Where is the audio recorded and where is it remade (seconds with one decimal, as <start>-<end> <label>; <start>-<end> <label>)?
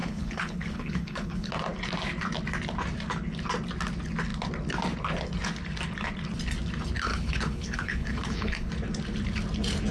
0.0-1.5 remade; 1.5-7.1 recorded; 7.1-8.7 remade; 8.7-9.9 recorded